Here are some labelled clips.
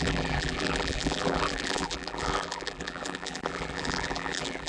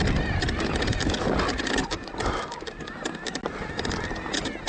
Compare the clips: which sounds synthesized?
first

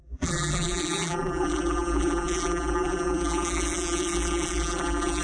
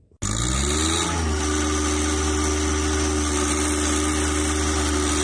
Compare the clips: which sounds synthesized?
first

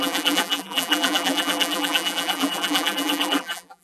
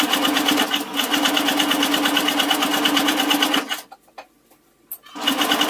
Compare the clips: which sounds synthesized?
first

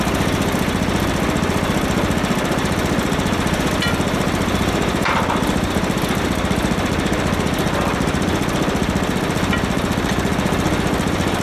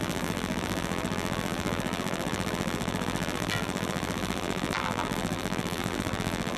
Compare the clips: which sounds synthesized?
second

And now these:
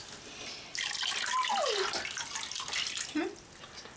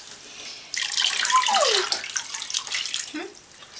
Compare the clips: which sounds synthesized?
second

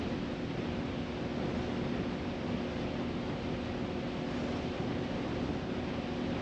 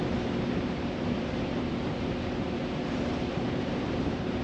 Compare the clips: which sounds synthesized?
second